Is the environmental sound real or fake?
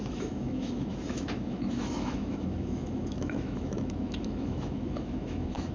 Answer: fake